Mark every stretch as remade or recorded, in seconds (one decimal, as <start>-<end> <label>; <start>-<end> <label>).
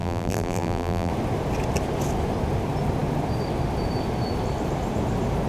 0.0-1.1 remade; 1.1-5.5 recorded